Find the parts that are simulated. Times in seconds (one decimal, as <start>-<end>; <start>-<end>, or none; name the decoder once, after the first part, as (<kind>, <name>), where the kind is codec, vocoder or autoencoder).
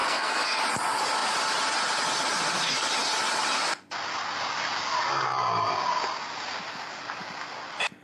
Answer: 0.0-0.6 (codec, SNAC)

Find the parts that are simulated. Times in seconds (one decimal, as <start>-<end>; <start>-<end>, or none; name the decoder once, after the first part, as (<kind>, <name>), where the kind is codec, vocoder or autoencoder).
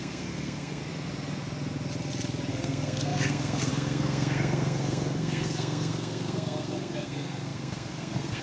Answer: 0.0-0.8 (codec, SNAC); 2.5-8.4